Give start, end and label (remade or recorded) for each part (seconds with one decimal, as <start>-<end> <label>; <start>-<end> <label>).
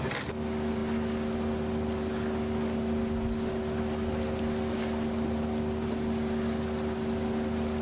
0.0-7.8 recorded